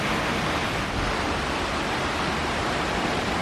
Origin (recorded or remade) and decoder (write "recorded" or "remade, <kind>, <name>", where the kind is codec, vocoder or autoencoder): recorded